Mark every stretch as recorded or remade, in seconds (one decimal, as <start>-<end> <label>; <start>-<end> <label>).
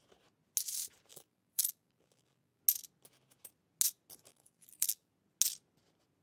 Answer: 0.0-1.1 recorded; 1.1-2.6 remade; 2.6-4.3 recorded; 4.3-5.1 remade; 5.1-6.2 recorded